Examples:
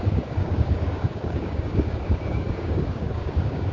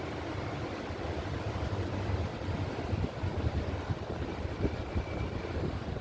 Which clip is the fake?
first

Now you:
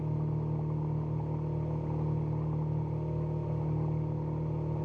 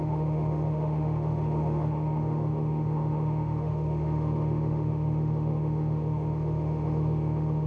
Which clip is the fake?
second